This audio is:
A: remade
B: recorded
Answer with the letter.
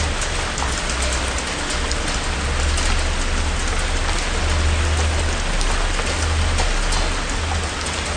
B